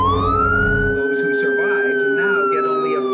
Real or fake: real